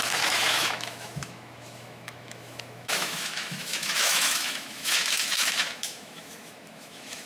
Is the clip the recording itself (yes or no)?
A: no